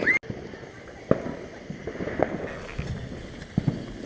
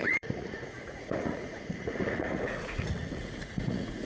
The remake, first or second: second